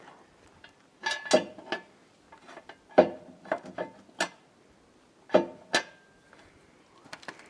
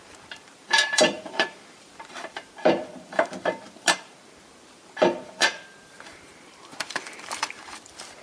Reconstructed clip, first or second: second